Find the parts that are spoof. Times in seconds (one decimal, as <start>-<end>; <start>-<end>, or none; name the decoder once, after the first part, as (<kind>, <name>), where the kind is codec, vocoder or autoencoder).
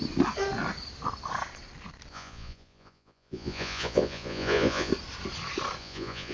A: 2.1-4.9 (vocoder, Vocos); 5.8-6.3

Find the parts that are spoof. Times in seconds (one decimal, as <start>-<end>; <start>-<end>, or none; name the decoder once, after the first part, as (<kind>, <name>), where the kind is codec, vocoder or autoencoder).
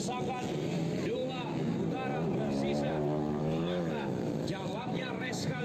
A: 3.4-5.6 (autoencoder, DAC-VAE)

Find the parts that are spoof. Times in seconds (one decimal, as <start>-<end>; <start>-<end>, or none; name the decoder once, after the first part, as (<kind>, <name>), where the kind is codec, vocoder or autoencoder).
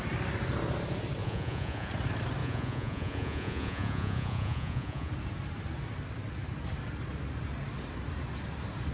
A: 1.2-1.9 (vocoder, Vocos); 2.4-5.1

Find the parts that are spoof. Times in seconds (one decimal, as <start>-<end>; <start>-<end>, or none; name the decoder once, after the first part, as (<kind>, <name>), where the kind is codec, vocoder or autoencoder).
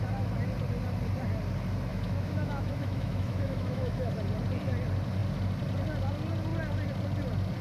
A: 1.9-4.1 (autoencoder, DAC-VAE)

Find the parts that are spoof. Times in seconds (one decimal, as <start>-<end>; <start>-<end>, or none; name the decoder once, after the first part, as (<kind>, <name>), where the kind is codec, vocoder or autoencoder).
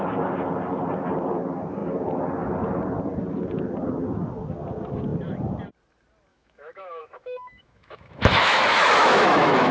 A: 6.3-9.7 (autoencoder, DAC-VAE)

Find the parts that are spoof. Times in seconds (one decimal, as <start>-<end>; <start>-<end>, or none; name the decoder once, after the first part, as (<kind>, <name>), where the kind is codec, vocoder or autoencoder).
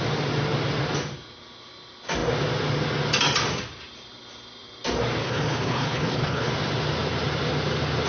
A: 5.2-6.5 (codec, HILCodec)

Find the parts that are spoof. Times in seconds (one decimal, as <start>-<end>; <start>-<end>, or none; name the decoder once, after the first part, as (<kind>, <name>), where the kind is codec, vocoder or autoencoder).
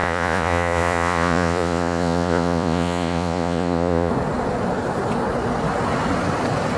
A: 0.0-4.1 (vocoder, Vocos)